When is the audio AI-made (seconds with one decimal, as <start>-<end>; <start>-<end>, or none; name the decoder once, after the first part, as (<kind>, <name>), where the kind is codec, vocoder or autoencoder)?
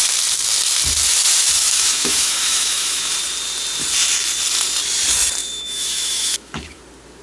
1.6-3.1 (autoencoder, DAC-VAE); 5.4-6.8